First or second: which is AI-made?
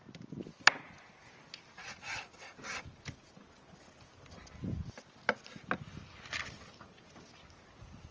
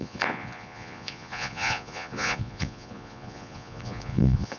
second